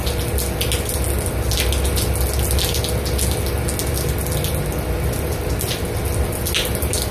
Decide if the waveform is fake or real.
real